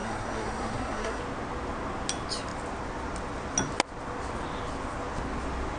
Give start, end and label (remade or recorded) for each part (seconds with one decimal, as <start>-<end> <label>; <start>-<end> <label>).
0.0-1.2 remade; 1.2-5.8 recorded